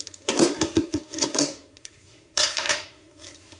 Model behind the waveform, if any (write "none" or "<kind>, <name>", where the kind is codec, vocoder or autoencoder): codec, SNAC